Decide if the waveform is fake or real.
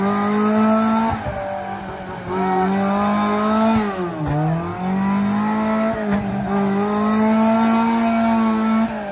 real